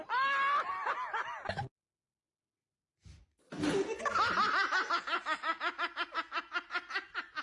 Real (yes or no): yes